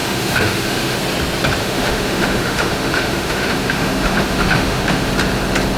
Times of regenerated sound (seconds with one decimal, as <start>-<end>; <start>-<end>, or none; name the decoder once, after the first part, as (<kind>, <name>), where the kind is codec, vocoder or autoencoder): 0.0-1.0 (autoencoder, DAC-VAE); 1.6-5.1